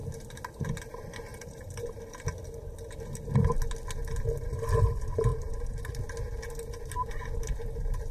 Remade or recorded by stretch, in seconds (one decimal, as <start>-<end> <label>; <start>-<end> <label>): 0.0-1.3 recorded; 1.3-2.0 remade; 2.0-5.3 recorded; 5.3-5.9 remade; 5.9-8.1 recorded